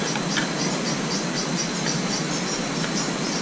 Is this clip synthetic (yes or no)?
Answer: no